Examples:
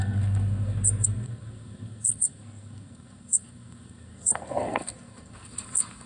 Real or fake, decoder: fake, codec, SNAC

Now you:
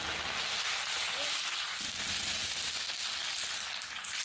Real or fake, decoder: real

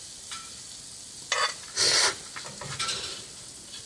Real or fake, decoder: real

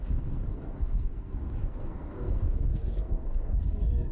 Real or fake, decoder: fake, codec, SNAC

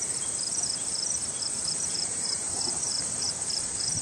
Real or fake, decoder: fake, vocoder, BigVGAN v2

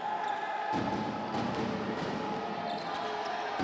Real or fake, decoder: real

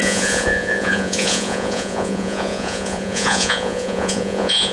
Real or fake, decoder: fake, vocoder, Vocos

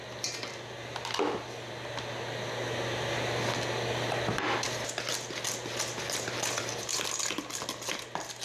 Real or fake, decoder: real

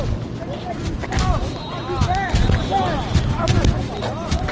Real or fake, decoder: real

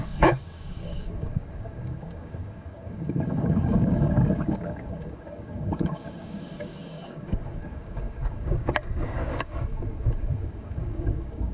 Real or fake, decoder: fake, codec, DAC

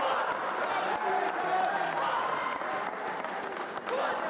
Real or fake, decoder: real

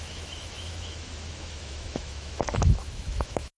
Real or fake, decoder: fake, autoencoder, DAC-VAE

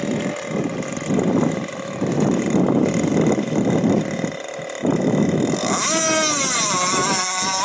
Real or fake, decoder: real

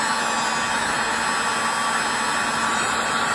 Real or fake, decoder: real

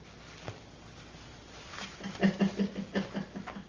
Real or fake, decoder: real